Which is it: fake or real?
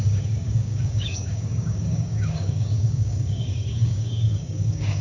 fake